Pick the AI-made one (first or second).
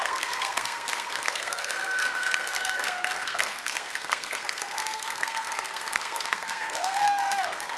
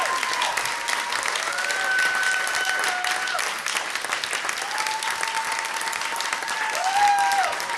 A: first